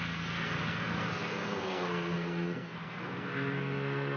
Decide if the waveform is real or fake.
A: fake